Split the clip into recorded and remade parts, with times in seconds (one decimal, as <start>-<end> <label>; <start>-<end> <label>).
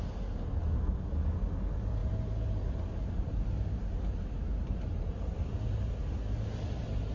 0.0-2.0 recorded; 2.0-5.4 remade; 5.4-7.1 recorded